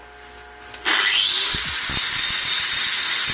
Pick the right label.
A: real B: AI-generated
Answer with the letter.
A